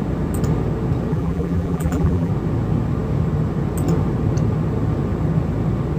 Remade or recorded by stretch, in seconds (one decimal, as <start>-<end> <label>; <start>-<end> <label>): 0.0-1.1 recorded; 1.1-2.3 remade; 2.3-6.0 recorded